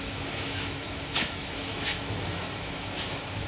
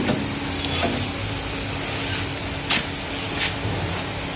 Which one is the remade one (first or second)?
first